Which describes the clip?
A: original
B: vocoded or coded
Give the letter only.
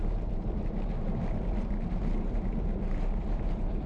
B